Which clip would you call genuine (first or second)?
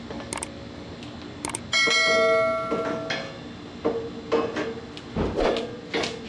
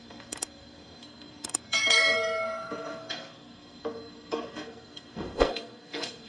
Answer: first